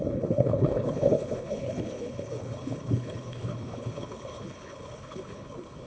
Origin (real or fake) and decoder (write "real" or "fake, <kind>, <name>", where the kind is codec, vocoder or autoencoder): fake, codec, HILCodec